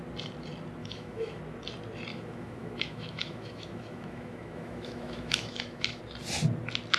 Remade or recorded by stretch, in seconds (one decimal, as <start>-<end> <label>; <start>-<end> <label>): 0.0-0.8 recorded; 0.8-1.4 remade; 1.4-2.1 recorded; 2.1-6.0 remade; 6.0-7.0 recorded